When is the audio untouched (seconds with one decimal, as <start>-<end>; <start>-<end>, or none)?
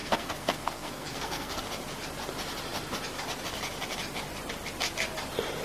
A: 1.6-5.6